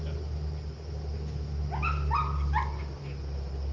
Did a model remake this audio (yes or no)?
no